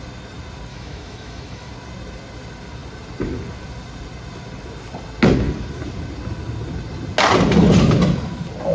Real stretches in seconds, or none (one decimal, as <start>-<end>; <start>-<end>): 0.0-0.7; 1.7-8.7